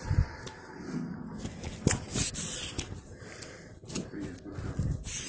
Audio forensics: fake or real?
real